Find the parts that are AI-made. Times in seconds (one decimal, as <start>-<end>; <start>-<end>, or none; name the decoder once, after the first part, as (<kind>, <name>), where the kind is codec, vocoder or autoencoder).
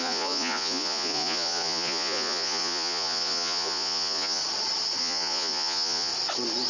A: 0.0-4.4 (vocoder, Vocos); 5.0-6.1